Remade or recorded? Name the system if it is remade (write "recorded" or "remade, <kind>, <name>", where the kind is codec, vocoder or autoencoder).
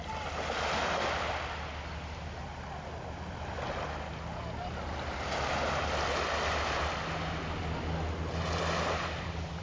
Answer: recorded